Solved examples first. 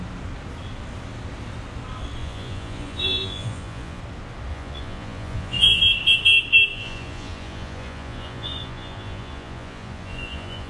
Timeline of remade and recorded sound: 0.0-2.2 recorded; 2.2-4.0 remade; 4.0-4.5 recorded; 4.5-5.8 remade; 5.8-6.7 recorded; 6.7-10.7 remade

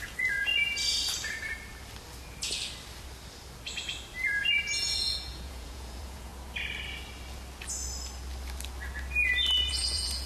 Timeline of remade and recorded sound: 0.0-0.5 remade; 0.5-4.5 recorded; 4.5-6.3 remade; 6.3-9.7 recorded; 9.7-10.3 remade